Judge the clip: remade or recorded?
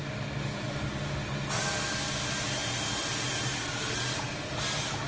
recorded